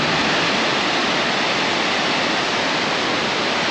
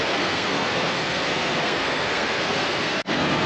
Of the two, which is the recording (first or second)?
first